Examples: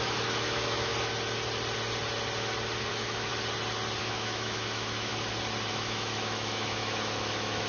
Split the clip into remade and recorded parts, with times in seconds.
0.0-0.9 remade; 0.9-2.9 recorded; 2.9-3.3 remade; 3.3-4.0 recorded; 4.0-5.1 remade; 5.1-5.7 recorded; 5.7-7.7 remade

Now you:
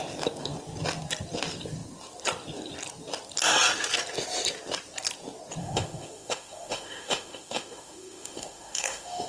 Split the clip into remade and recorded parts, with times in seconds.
0.0-5.6 recorded; 5.6-9.3 remade

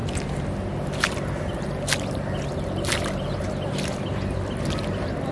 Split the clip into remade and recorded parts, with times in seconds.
0.0-5.3 recorded

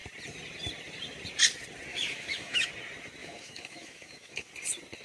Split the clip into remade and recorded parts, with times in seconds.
0.0-1.9 recorded; 1.9-2.7 remade; 2.7-3.2 recorded; 3.2-4.5 remade; 4.5-5.0 recorded

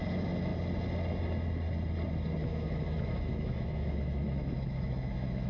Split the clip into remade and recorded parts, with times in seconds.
0.0-2.4 recorded; 2.4-5.5 remade